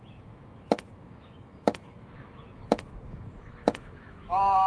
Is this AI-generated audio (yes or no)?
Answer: yes